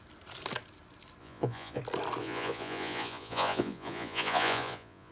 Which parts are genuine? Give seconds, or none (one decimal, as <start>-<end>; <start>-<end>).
0.0-1.2; 1.8-2.2

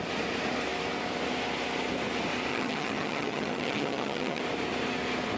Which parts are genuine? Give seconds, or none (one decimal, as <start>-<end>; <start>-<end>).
0.0-2.5; 4.4-5.4

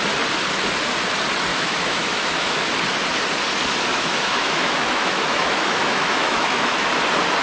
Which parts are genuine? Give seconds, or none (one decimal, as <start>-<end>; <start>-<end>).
0.0-1.5; 2.7-3.9; 6.9-7.4